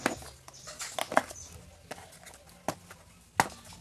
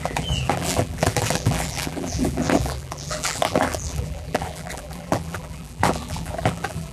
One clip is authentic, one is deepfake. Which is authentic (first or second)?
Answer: first